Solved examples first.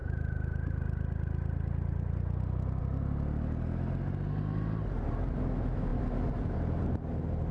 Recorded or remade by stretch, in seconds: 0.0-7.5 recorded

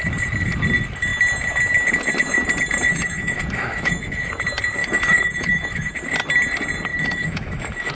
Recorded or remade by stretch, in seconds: 0.0-2.9 recorded; 2.9-4.3 remade; 4.3-4.8 recorded; 4.8-5.9 remade; 5.9-6.9 recorded; 6.9-7.9 remade